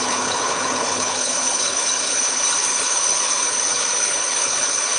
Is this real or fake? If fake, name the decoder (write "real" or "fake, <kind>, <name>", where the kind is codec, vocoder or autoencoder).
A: fake, codec, HILCodec